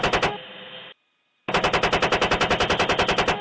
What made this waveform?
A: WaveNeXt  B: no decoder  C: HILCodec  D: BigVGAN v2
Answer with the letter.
B